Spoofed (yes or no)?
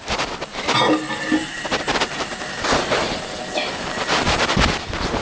no